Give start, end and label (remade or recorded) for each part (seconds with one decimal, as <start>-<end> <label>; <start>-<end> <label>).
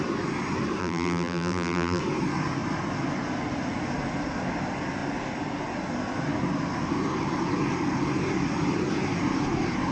0.0-0.8 recorded; 0.8-2.0 remade; 2.0-9.9 recorded